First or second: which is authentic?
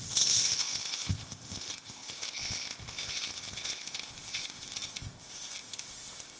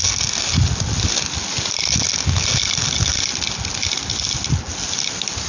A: second